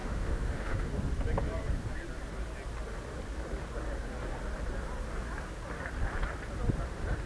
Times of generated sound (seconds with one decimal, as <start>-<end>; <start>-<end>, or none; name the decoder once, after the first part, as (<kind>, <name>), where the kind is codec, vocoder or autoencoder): 0.0-0.9 (autoencoder, DAC-VAE)